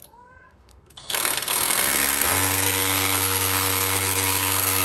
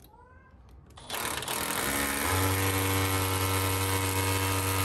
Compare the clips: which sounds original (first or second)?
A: second